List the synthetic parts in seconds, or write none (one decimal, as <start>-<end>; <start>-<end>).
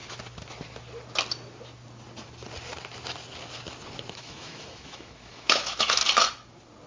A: 4.1-6.0